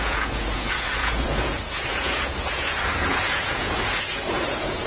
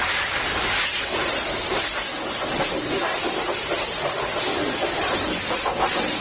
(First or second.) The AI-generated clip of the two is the first